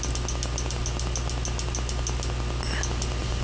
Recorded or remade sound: recorded